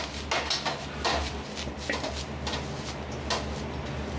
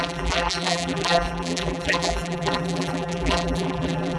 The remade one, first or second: second